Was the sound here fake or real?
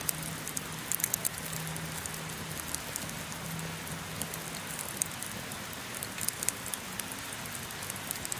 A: real